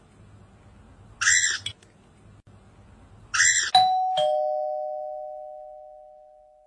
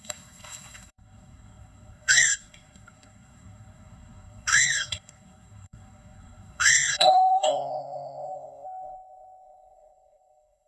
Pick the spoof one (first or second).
second